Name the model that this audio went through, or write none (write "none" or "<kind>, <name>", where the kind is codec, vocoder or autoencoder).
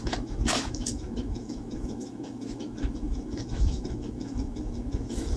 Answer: autoencoder, DAC-VAE